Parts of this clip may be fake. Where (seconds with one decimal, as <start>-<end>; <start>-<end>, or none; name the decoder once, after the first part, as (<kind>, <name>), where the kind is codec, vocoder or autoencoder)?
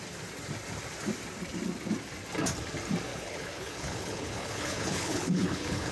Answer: 3.1-5.9 (codec, HILCodec)